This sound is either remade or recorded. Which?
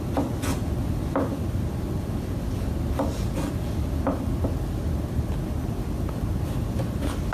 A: recorded